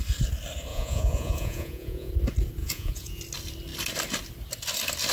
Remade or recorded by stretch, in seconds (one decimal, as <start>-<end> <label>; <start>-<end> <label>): 0.0-0.7 recorded; 0.7-2.1 remade; 2.1-2.6 recorded; 2.6-3.2 remade; 3.2-5.1 recorded